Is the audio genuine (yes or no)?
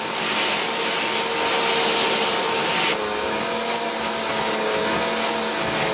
yes